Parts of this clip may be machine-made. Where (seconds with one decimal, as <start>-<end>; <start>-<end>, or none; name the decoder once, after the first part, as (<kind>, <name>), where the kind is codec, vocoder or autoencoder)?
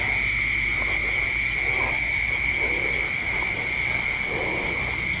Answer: none